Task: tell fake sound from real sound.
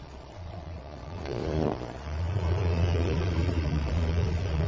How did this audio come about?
fake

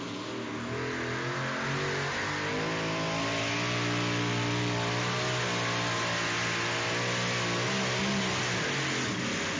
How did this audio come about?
real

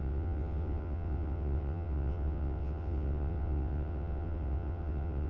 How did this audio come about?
fake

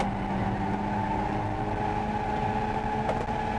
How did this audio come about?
real